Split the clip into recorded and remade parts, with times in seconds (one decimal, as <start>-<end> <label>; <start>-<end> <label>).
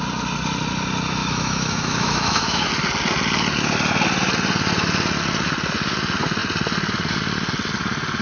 0.0-1.2 recorded; 1.2-2.7 remade; 2.7-8.2 recorded